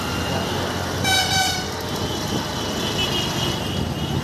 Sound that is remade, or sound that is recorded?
recorded